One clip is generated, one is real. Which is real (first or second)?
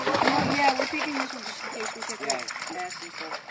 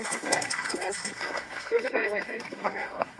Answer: first